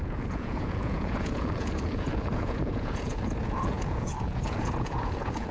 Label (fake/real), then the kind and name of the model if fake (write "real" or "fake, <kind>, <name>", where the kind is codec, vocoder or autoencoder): fake, vocoder, Vocos